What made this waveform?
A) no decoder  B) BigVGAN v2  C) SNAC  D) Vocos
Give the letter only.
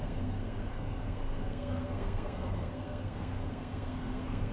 C